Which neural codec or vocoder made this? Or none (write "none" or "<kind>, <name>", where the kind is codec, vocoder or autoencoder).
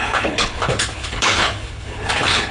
codec, HILCodec